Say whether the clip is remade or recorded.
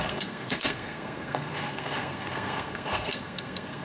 remade